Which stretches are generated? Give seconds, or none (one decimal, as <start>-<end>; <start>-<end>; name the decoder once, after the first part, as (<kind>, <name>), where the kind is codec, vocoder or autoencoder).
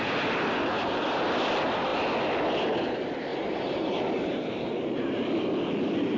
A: 3.3-5.2 (vocoder, BigVGAN v2)